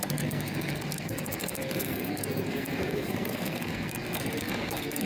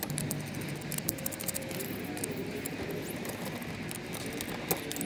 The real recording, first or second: second